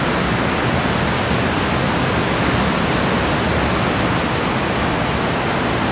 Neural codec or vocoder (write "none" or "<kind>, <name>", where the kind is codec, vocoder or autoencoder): none